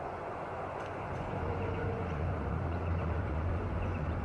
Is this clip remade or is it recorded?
remade